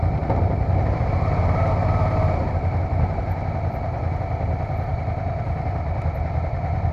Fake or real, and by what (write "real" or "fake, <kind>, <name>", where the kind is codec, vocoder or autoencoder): real